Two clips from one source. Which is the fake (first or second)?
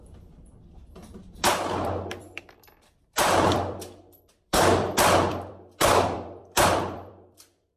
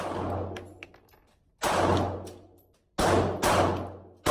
first